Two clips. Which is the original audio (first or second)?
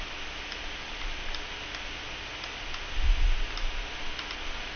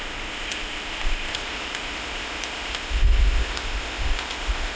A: first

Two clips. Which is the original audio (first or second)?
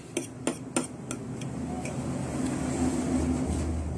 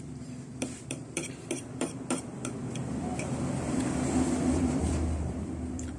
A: first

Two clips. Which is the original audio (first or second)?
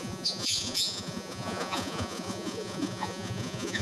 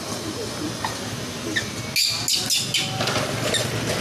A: second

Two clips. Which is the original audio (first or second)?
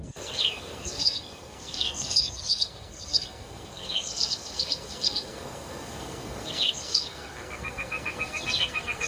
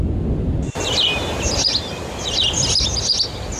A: second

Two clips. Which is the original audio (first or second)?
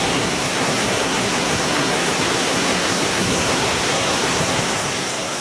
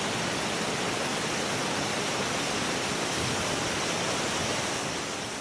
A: second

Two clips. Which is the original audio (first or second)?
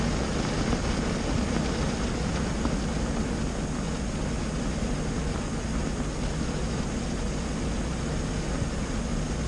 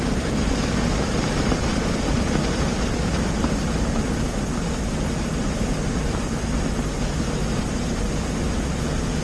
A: first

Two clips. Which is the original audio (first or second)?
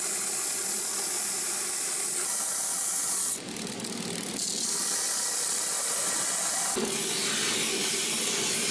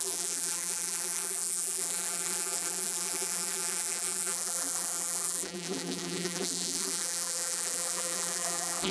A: first